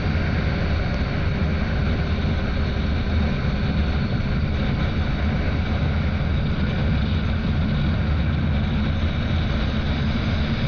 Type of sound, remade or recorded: recorded